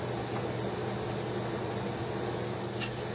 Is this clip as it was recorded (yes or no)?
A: yes